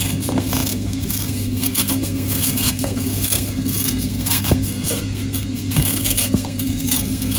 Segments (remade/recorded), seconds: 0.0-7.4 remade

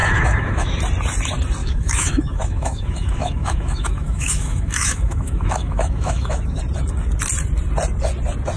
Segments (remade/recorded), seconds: 0.0-0.8 remade; 0.8-1.6 recorded; 1.6-6.6 remade; 6.6-8.6 recorded

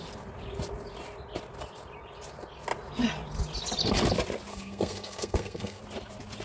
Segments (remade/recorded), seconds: 0.0-4.5 recorded; 4.5-5.8 remade; 5.8-6.4 recorded

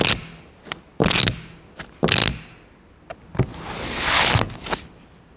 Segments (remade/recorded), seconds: 0.0-5.4 recorded

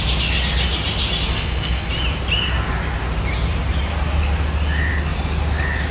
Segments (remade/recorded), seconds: 0.0-1.3 recorded; 1.3-1.9 remade; 1.9-5.9 recorded

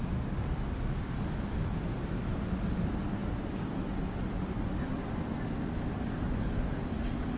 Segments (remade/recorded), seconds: 0.0-3.2 recorded; 3.2-6.1 remade; 6.1-7.4 recorded